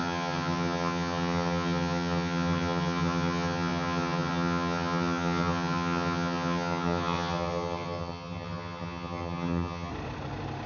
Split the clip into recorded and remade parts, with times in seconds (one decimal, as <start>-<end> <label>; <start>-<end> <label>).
0.0-9.9 remade; 9.9-10.7 recorded